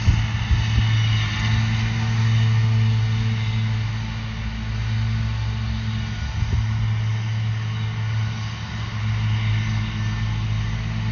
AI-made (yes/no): no